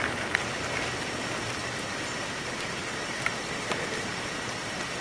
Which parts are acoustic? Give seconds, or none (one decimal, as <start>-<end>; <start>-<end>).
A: 0.0-5.0